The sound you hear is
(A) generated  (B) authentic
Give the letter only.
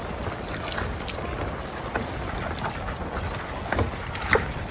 B